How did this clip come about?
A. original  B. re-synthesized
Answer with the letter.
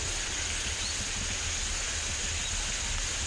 A